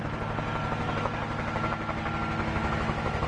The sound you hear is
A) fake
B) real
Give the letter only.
B